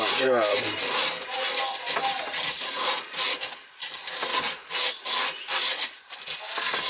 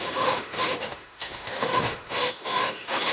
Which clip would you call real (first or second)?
first